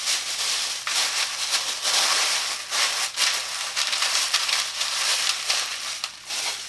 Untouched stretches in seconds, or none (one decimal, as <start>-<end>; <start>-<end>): 0.0-3.4; 6.3-6.7